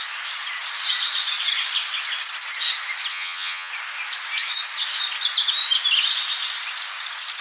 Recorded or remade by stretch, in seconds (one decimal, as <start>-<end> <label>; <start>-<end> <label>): 0.0-3.1 recorded; 3.1-3.7 remade; 3.7-7.4 recorded